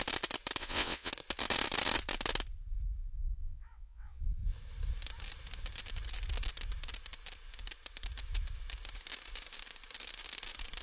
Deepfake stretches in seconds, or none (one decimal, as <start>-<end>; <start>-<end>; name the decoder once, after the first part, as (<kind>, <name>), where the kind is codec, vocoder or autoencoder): 0.6-1.1 (vocoder, WaveNeXt); 3.4-4.2